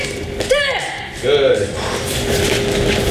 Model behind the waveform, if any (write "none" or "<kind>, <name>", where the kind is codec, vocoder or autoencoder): none